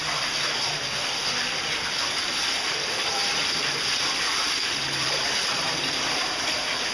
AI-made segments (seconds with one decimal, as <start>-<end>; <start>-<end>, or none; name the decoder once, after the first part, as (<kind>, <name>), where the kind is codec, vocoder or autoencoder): 0.0-3.2 (vocoder, BigVGAN v2); 4.2-6.9